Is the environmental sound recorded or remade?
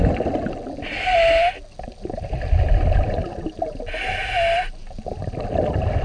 recorded